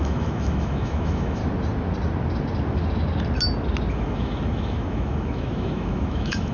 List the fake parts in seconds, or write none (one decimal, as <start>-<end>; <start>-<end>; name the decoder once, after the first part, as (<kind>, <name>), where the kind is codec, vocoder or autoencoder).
0.0-1.4 (autoencoder, DAC-VAE); 3.9-6.5